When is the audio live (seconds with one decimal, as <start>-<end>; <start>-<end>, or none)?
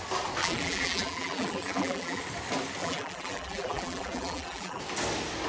0.0-0.4; 2.2-2.8; 4.8-5.5